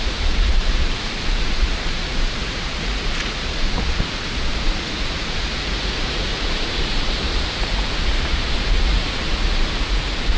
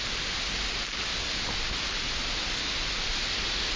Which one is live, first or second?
second